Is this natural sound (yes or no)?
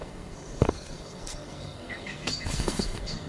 no